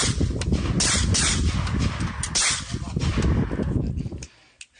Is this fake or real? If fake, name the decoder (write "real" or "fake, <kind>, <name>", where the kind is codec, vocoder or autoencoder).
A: real